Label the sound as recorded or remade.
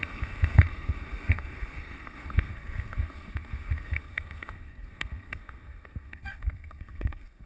remade